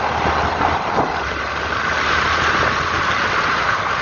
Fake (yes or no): no